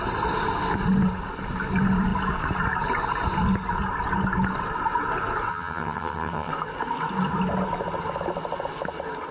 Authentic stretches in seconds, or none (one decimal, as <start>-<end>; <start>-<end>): 0.0-5.5; 6.5-9.3